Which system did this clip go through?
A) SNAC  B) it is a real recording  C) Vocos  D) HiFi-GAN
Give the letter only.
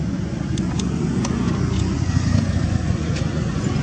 C